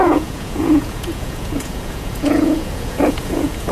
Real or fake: fake